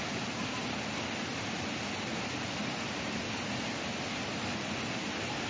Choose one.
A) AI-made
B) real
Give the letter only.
B